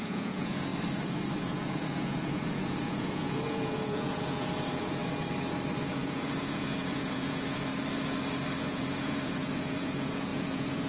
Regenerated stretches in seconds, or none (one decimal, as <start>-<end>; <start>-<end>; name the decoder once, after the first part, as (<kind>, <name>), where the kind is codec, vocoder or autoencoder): 0.0-0.7 (vocoder, Vocos); 1.4-5.0; 5.9-7.7; 8.6-10.9